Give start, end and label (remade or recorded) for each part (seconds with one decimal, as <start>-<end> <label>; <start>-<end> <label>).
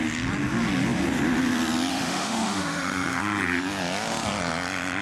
0.0-1.9 recorded; 1.9-3.2 remade; 3.2-5.0 recorded